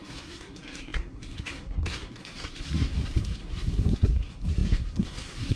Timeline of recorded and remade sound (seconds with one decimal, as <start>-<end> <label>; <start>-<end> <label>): 0.0-5.6 remade